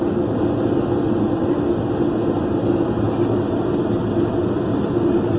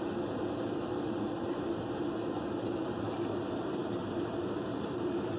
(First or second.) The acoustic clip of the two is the first